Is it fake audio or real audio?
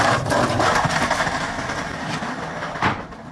real